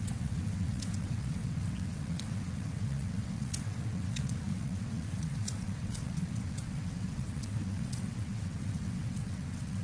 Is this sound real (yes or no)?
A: no